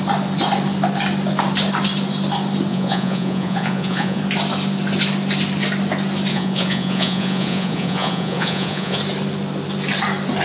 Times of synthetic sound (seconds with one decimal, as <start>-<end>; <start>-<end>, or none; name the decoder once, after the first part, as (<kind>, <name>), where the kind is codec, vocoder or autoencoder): 2.7-4.2 (vocoder, Vocos); 6.3-9.0